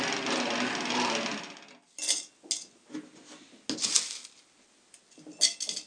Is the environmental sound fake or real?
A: real